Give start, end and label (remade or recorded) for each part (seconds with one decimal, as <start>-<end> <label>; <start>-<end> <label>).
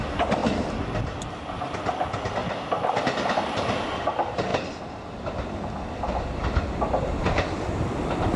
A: 0.0-8.4 recorded